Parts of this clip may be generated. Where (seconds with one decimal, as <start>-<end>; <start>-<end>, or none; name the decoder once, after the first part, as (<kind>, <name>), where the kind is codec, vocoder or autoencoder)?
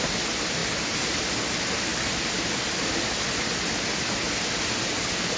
none